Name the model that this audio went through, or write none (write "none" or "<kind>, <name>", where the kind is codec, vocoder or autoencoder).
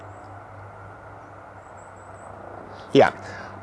none